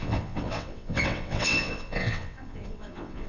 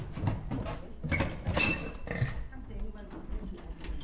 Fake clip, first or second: first